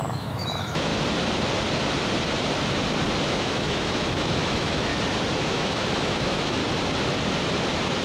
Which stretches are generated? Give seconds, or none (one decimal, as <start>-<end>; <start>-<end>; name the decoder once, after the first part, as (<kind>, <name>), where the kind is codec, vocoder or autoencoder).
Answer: 0.0-0.9 (autoencoder, DAC-VAE); 3.2-4.9; 5.4-6.6